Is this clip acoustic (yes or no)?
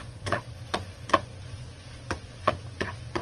no